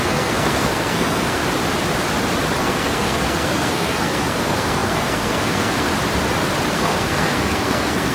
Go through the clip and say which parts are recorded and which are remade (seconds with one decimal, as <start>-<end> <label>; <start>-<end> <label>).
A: 0.0-1.4 remade; 1.4-2.6 recorded; 2.6-5.9 remade; 5.9-6.7 recorded; 6.7-8.1 remade